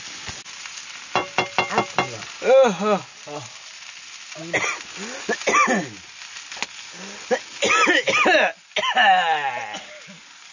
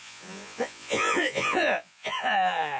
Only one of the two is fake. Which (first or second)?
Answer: second